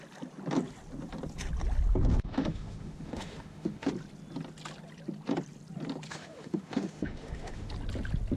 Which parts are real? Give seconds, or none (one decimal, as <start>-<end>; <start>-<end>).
0.0-2.1; 3.9-6.1; 7.7-8.4